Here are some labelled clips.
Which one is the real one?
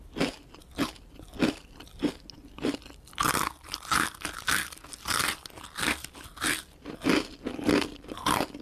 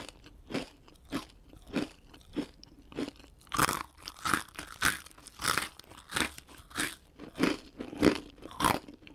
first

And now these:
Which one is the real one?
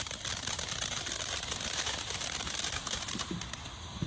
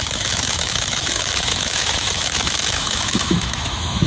first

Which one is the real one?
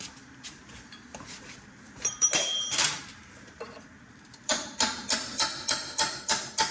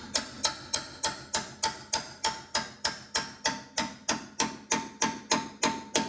second